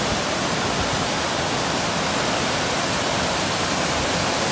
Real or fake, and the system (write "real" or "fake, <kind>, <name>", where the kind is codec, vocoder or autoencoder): real